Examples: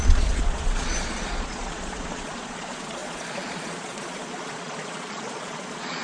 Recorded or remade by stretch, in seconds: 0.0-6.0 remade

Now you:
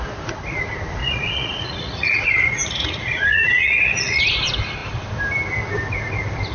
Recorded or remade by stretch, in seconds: 0.0-1.0 recorded; 1.0-4.2 remade; 4.2-6.5 recorded